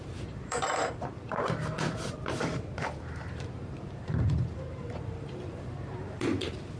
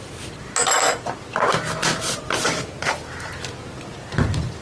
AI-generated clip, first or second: first